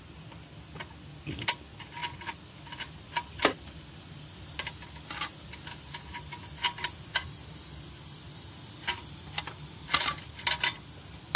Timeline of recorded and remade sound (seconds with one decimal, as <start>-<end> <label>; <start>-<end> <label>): 0.0-2.0 recorded; 2.0-3.5 remade; 3.5-8.8 recorded; 8.8-10.0 remade; 10.0-11.4 recorded